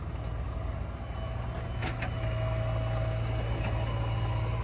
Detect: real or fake real